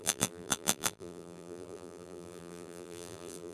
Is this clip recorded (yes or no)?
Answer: no